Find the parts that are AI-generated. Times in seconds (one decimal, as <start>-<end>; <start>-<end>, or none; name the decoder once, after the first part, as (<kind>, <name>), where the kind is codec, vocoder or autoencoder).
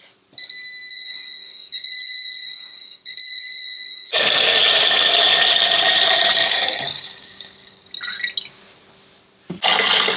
0.9-4.2 (codec, DAC); 6.4-7.9